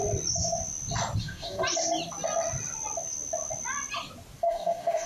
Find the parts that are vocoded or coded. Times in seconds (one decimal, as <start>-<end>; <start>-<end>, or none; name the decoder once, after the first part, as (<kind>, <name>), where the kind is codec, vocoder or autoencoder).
1.2-1.6 (codec, DAC); 4.4-5.1